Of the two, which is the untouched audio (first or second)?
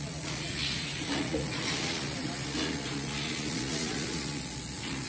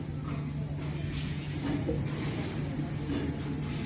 second